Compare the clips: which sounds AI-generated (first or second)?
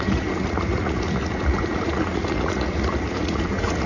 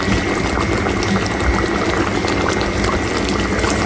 first